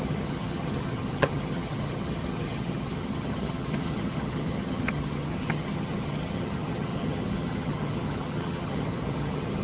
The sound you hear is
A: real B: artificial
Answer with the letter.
B